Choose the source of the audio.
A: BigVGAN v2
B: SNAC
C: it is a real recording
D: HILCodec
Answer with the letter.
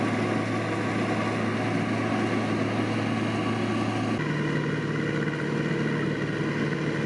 C